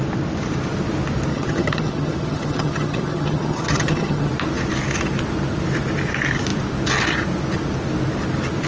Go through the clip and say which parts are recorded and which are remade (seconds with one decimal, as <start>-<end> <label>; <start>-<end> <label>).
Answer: 0.0-1.3 recorded; 1.3-4.3 remade; 4.3-8.7 recorded